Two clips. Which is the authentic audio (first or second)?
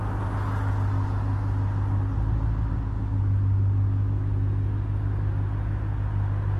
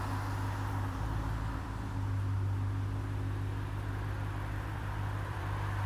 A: first